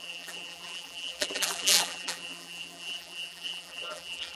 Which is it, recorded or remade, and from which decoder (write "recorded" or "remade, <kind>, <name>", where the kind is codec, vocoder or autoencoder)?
remade, vocoder, BigVGAN v2